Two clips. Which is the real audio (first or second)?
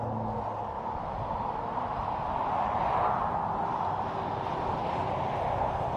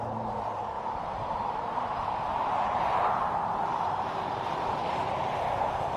first